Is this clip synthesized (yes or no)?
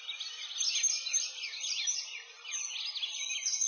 no